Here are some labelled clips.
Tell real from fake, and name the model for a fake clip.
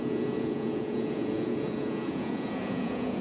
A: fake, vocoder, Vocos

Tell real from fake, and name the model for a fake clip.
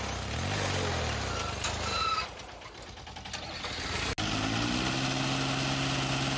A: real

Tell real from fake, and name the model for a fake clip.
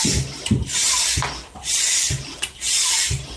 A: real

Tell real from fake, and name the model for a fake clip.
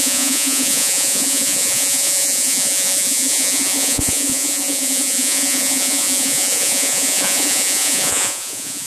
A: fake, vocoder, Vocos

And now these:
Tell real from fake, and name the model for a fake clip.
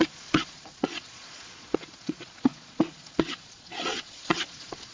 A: fake, vocoder, Vocos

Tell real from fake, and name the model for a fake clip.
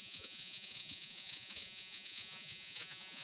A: fake, vocoder, Vocos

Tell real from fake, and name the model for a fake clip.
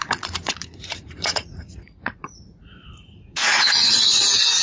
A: fake, vocoder, Vocos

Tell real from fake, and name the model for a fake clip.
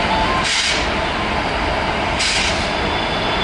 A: real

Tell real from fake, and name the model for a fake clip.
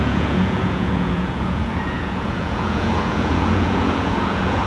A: fake, vocoder, Vocos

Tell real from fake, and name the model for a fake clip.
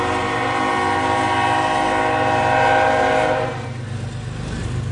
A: real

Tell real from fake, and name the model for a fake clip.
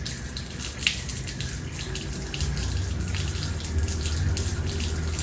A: real